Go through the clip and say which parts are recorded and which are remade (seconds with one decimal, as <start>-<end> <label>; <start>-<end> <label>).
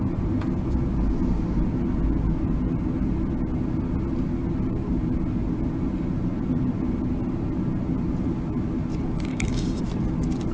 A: 0.0-9.3 recorded; 9.3-9.8 remade; 9.8-10.5 recorded